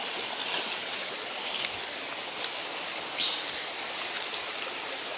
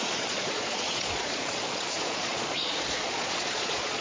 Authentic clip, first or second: first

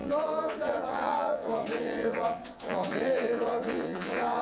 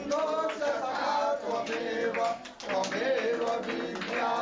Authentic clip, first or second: second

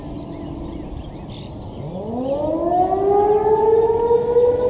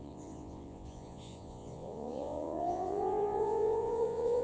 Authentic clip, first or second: first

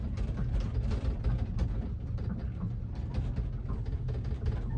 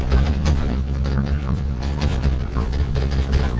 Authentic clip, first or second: first